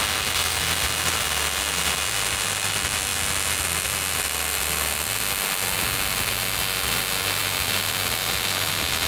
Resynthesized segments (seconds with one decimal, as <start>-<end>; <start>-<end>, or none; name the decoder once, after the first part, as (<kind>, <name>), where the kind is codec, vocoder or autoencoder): none